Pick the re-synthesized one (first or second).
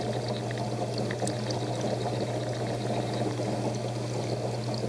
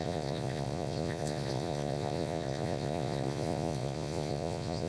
second